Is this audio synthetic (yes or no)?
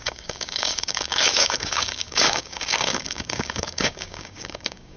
yes